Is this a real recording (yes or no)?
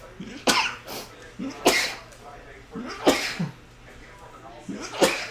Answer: no